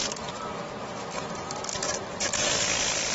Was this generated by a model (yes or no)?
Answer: no